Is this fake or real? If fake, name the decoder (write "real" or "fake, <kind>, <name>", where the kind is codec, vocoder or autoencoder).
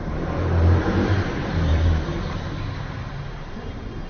fake, vocoder, BigVGAN v2